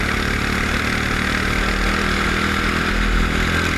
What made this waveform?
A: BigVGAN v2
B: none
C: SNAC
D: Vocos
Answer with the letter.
B